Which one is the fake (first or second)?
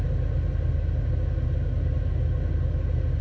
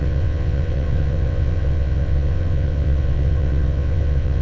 second